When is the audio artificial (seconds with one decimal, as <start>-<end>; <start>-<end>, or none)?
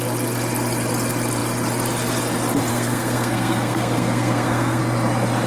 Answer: 2.7-4.8